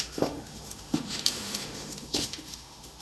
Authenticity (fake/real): fake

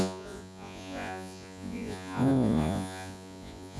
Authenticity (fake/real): fake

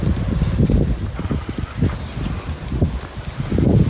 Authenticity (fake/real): real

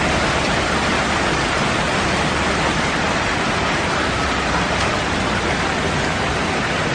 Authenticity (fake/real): real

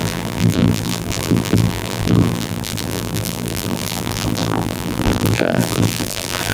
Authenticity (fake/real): fake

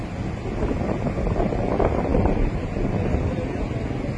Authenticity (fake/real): real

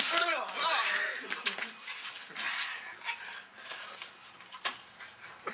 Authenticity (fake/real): real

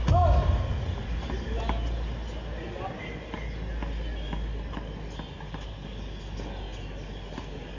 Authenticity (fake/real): real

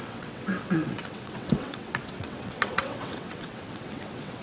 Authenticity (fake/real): fake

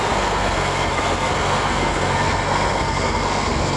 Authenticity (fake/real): fake